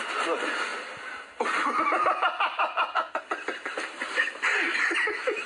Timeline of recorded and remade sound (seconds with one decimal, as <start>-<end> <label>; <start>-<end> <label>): 0.0-5.5 recorded